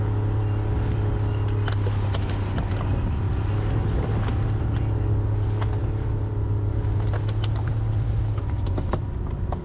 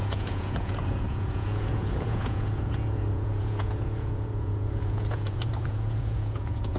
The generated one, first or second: second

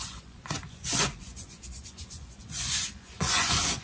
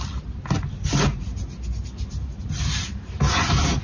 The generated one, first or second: first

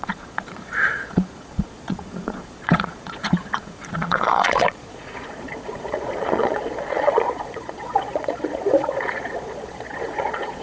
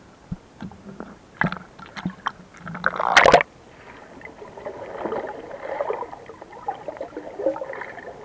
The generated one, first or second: first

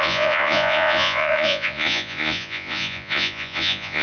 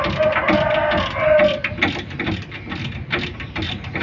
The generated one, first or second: first